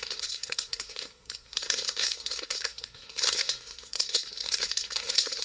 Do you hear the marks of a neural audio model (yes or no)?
yes